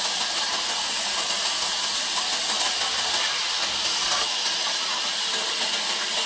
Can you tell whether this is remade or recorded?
recorded